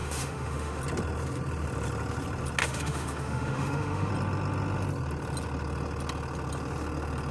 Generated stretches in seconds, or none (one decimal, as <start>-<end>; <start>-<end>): 0.0-0.8; 2.6-4.1